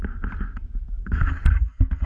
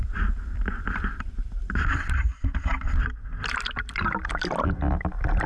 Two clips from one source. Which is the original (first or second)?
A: first